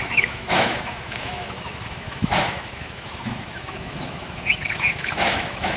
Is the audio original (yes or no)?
no